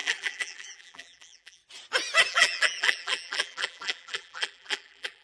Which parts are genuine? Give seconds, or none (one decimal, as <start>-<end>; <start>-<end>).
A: 1.6-2.3